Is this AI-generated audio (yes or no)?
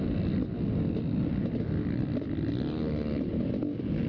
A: no